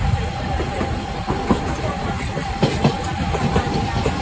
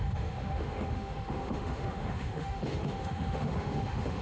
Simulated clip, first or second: second